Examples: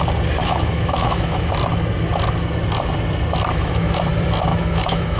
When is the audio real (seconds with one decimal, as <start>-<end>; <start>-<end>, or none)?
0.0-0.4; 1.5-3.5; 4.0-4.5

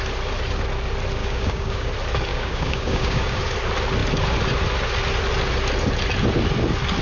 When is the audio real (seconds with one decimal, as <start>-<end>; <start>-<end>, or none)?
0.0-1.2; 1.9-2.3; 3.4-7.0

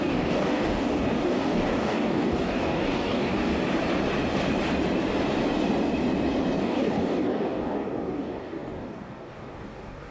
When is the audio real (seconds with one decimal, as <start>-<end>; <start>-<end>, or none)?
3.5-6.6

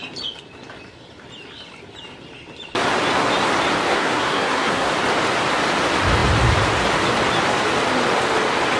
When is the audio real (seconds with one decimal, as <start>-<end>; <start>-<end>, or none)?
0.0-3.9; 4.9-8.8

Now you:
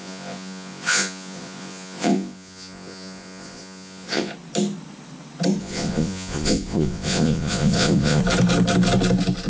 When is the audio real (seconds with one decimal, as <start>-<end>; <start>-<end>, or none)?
4.3-5.6; 8.2-9.5